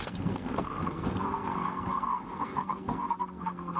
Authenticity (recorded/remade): remade